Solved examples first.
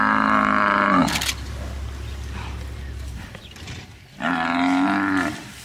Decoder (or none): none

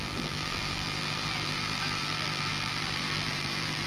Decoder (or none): vocoder, BigVGAN v2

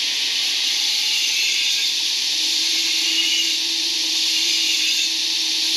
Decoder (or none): vocoder, BigVGAN v2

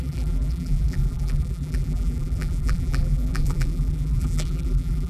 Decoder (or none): vocoder, BigVGAN v2